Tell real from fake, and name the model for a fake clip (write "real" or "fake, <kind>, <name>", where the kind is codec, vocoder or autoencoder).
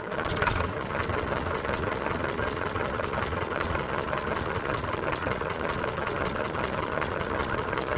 fake, vocoder, Vocos